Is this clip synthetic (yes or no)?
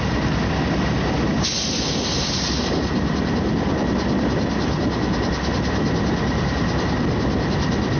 no